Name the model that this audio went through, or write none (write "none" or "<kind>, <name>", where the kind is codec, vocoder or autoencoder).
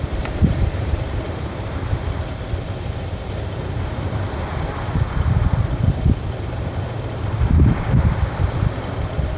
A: vocoder, BigVGAN v2